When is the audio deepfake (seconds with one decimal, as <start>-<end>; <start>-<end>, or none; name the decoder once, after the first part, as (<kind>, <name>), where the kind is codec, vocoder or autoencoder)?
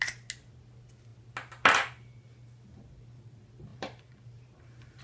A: 3.7-5.0 (vocoder, BigVGAN v2)